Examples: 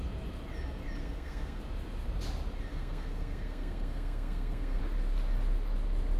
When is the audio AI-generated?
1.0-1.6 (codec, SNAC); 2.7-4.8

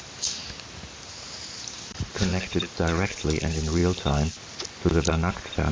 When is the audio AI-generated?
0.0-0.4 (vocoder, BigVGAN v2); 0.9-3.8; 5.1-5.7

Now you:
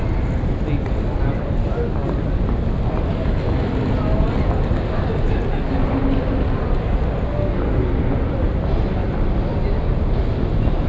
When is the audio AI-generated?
none

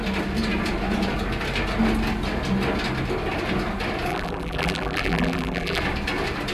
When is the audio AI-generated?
4.1-5.8 (vocoder, BigVGAN v2)

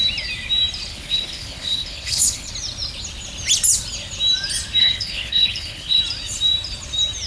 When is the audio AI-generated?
0.9-2.5 (codec, HILCodec); 4.8-6.0

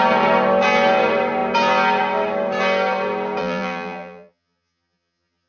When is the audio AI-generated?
3.4-5.5 (vocoder, BigVGAN v2)

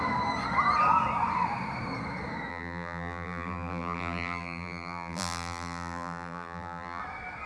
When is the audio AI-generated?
2.5-7.0 (vocoder, BigVGAN v2)